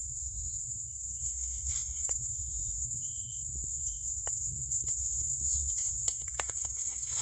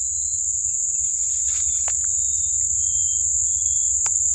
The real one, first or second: second